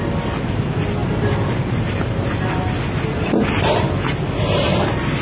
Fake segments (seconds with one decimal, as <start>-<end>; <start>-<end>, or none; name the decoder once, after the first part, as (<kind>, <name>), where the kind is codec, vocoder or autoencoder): 1.0-1.6 (vocoder, BigVGAN v2)